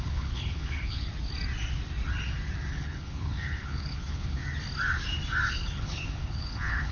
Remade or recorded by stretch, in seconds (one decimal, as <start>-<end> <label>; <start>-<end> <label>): 0.0-1.1 remade; 1.1-2.7 recorded; 2.7-4.4 remade; 4.4-5.5 recorded; 5.5-6.9 remade